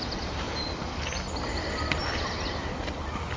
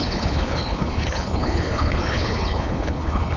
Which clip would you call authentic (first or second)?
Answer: first